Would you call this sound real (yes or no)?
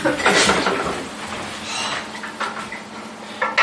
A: yes